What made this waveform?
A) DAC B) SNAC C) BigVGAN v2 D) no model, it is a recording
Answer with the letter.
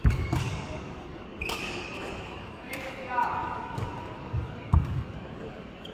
A